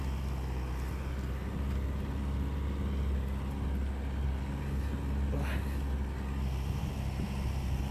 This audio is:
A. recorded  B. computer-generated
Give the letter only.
A